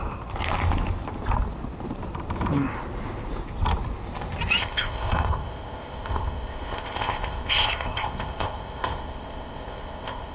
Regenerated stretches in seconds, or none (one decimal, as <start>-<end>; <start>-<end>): 4.6-10.3